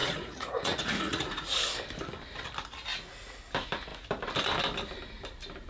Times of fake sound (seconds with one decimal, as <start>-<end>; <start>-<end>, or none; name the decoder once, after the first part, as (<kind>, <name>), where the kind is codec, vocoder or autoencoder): 0.0-1.6 (vocoder, Vocos); 2.9-3.4